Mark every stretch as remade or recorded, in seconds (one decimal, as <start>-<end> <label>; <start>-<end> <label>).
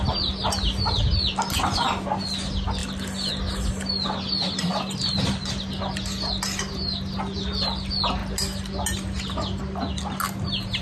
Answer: 0.0-10.8 recorded